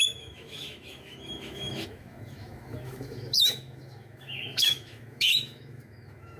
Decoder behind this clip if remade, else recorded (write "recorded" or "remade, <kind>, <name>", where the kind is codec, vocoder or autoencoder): remade, autoencoder, DAC-VAE